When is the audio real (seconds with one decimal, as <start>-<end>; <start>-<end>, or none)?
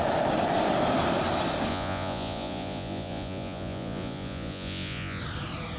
0.0-1.7; 5.2-5.8